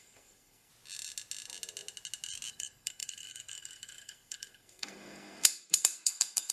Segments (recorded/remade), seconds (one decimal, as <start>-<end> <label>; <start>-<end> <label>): 0.0-0.7 remade; 0.7-2.5 recorded; 2.5-6.5 remade